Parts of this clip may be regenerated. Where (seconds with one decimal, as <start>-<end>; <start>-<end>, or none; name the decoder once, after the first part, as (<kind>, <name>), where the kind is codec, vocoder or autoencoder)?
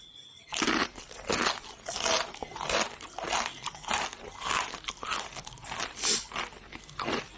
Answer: none